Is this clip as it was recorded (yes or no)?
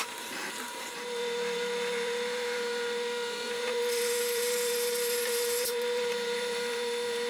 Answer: no